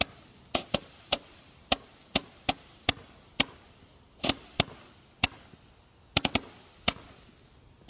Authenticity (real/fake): real